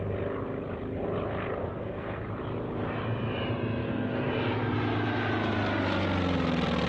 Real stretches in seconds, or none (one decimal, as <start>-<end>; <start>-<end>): 0.0-1.6; 2.2-3.8; 4.3-6.9